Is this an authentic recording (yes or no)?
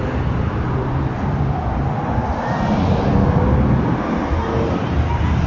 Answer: yes